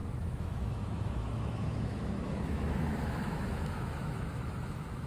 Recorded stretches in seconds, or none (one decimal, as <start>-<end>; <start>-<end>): none